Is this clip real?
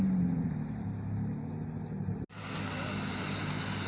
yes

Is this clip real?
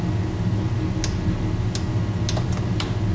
yes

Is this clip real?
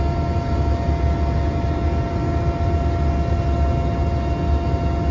yes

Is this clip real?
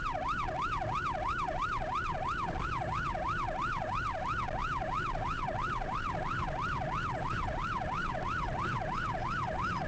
no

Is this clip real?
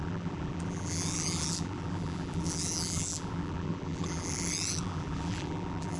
no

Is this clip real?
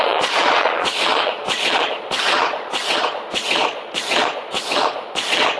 no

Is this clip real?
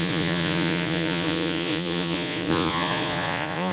no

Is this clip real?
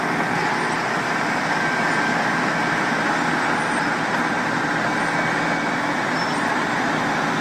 yes